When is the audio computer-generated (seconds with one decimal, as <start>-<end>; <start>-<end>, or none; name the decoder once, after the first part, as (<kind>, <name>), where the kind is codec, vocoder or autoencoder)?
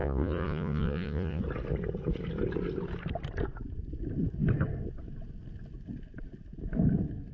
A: 0.0-1.4 (vocoder, Vocos)